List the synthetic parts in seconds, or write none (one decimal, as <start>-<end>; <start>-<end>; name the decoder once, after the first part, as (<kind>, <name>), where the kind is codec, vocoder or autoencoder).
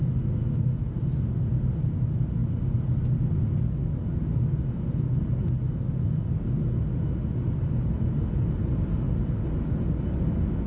none